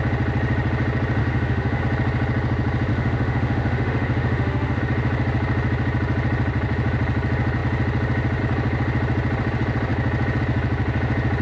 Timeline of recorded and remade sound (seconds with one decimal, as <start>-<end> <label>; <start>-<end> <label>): 0.0-1.2 recorded; 1.2-1.8 remade; 1.8-2.9 recorded; 2.9-4.8 remade; 4.8-11.4 recorded